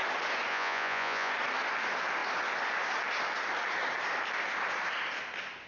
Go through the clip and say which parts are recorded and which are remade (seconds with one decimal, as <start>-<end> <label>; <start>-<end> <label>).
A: 0.0-0.5 recorded; 0.5-1.3 remade; 1.3-5.7 recorded